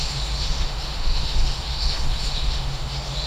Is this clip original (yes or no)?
no